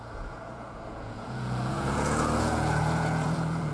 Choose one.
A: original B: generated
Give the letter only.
B